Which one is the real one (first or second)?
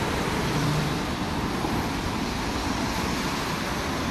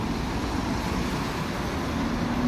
second